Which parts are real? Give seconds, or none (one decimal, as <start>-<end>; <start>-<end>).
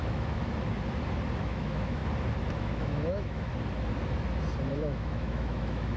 0.5-1.4; 2.0-2.5; 3.5-4.7